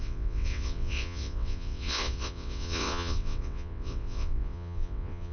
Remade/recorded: remade